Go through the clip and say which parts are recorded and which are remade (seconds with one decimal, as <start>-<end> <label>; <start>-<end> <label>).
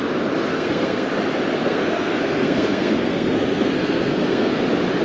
0.0-0.5 recorded; 0.5-1.1 remade; 1.1-1.6 recorded; 1.6-4.6 remade; 4.6-5.0 recorded